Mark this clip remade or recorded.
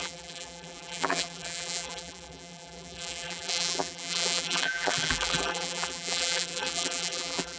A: remade